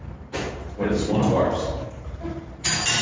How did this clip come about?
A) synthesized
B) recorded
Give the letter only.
A